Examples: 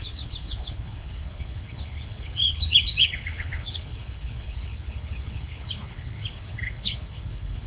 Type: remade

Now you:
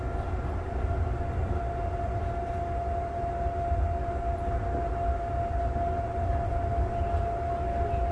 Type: recorded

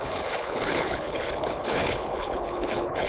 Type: remade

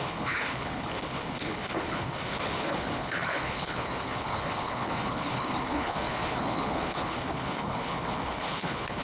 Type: remade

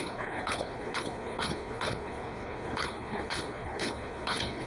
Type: remade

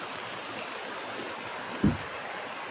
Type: recorded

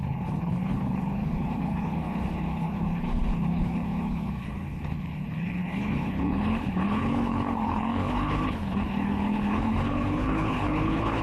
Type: remade